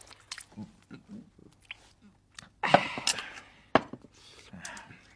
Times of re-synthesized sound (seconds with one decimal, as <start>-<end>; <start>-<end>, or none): none